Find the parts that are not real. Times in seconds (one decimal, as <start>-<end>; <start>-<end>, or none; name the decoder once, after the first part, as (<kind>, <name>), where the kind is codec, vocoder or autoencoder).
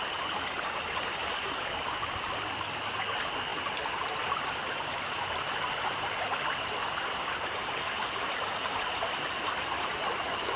none